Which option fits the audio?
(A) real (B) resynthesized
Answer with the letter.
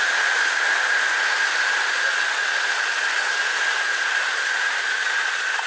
A